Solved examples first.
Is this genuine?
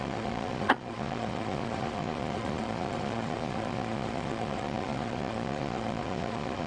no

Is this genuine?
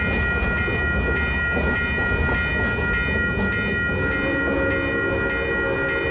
yes